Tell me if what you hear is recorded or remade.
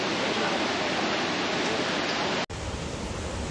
recorded